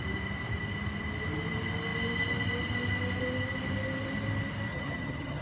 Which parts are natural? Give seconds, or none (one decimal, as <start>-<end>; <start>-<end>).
0.0-4.7